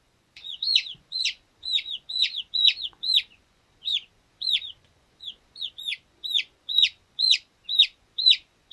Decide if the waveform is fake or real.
fake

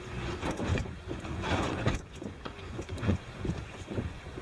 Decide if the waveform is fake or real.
fake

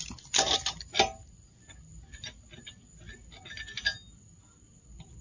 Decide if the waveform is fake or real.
real